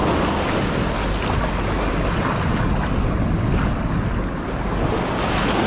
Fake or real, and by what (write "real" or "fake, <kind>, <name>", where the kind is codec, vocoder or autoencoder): real